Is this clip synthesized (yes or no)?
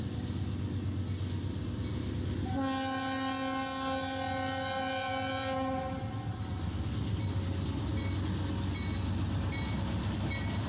no